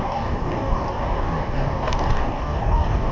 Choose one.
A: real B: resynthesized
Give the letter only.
B